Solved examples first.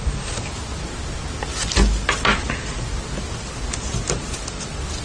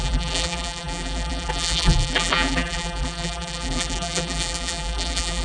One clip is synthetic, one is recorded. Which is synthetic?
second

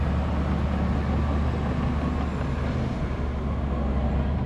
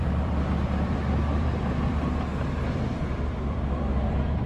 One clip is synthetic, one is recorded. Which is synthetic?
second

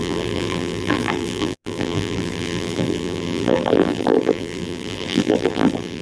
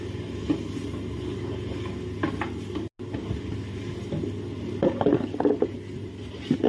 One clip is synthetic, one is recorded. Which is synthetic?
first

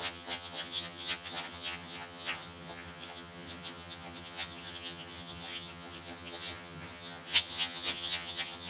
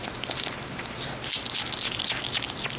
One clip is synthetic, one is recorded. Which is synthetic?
first